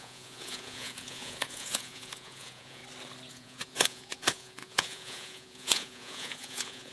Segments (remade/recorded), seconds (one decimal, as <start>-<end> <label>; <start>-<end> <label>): 0.0-2.8 remade; 2.8-3.3 recorded; 3.3-6.9 remade